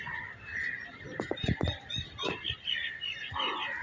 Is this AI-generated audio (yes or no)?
no